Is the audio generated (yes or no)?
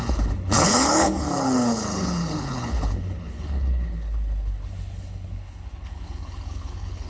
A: yes